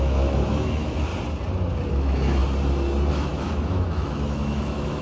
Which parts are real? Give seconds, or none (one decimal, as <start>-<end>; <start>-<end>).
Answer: 1.1-1.9; 2.4-3.1